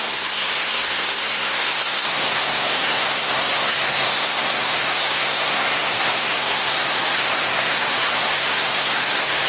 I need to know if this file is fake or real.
fake